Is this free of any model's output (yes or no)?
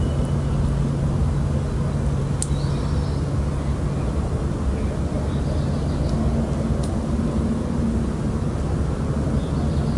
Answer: yes